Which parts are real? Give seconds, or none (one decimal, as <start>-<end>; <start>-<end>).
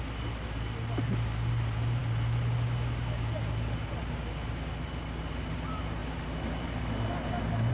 0.0-7.7